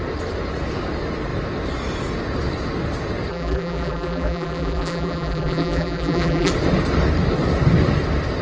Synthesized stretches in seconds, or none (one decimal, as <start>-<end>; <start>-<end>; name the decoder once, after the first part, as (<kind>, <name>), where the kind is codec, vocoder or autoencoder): 3.3-6.5 (vocoder, BigVGAN v2)